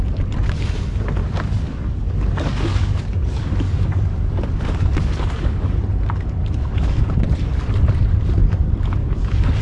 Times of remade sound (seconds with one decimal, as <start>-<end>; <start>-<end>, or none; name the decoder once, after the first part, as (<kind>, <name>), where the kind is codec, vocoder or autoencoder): 1.2-5.8 (codec, DAC); 6.4-7.1; 9.0-9.6